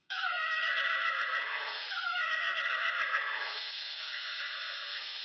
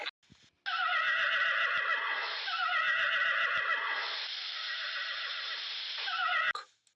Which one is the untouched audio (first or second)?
second